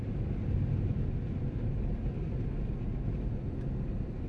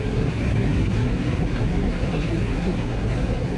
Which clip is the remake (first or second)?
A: second